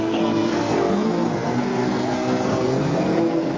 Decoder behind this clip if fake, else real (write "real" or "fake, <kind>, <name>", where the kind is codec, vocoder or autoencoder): fake, codec, SNAC